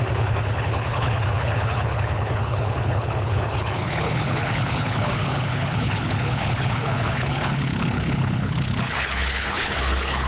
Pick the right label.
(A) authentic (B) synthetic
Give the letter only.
B